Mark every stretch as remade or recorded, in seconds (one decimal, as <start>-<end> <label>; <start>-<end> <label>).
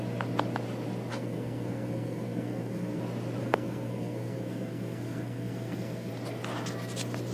0.0-1.1 recorded; 1.1-3.0 remade; 3.0-3.4 recorded; 3.4-6.1 remade; 6.1-7.3 recorded